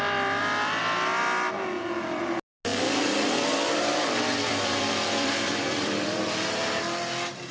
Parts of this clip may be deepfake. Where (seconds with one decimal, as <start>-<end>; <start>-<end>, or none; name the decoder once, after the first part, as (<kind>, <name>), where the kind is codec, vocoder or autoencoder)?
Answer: 2.7-6.8 (vocoder, BigVGAN v2)